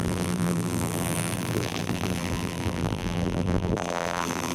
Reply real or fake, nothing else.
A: fake